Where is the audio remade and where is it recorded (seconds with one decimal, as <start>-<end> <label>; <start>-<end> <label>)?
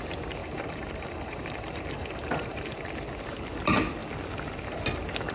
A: 0.0-0.4 recorded; 0.4-2.7 remade; 2.7-5.3 recorded